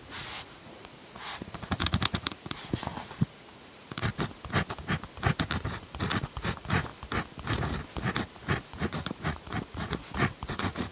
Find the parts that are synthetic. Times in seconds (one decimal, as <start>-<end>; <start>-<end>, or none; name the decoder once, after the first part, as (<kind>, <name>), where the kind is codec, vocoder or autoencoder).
0.0-4.1 (vocoder, Vocos); 5.8-6.9; 8.7-10.9